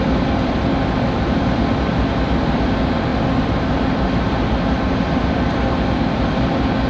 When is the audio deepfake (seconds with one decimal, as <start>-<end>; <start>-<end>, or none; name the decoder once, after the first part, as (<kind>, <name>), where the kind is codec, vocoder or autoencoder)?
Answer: 0.0-6.9 (vocoder, BigVGAN v2)